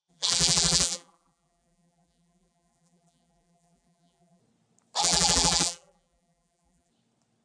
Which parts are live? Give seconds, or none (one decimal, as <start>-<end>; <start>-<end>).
4.4-5.0; 6.9-7.4